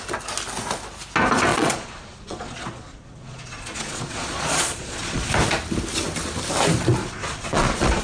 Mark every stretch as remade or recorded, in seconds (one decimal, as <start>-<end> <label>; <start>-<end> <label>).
0.0-1.5 recorded; 1.5-5.3 remade; 5.3-7.0 recorded; 7.0-8.0 remade